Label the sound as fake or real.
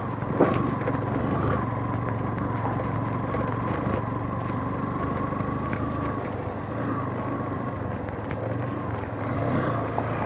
real